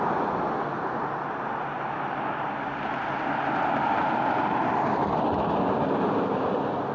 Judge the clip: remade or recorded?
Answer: recorded